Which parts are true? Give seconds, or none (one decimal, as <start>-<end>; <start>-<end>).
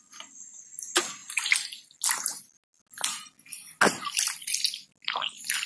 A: 0.0-5.7